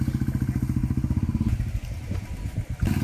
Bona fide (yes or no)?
yes